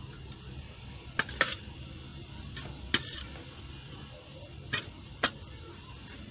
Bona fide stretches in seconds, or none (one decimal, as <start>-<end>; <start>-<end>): 0.0-6.3

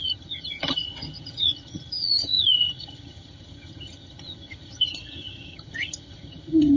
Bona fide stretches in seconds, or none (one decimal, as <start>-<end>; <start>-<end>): none

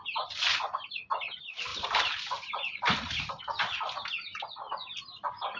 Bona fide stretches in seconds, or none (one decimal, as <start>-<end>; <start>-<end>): 0.0-1.7; 3.3-5.6